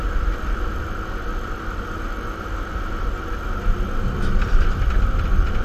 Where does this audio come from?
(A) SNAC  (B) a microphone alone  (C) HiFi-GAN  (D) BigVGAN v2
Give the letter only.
D